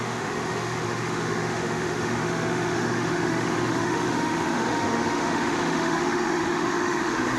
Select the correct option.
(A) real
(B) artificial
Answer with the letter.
B